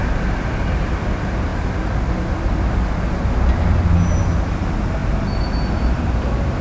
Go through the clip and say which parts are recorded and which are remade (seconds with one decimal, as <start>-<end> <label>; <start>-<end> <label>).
0.0-6.6 recorded